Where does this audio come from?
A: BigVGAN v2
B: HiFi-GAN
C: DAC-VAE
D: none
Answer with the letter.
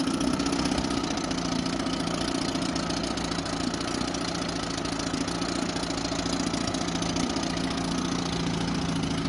D